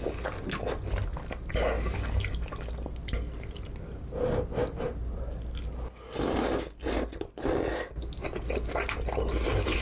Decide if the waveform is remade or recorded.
recorded